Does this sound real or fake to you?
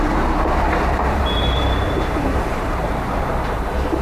fake